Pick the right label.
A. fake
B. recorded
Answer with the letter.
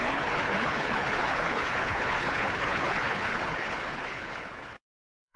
A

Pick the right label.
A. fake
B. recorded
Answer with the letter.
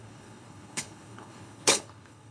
A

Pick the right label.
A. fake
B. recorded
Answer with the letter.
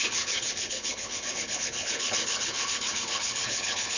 A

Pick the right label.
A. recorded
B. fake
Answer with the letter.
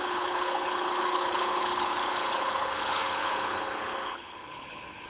B